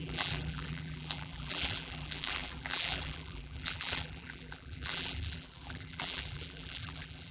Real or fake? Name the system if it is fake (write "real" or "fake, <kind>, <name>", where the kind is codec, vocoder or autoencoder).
fake, vocoder, BigVGAN v2